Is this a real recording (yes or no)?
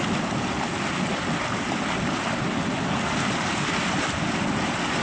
yes